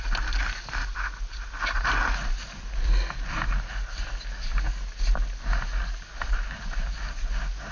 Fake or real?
real